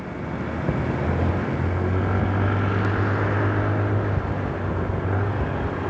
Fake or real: real